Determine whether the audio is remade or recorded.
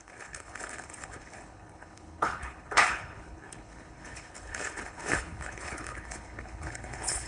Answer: remade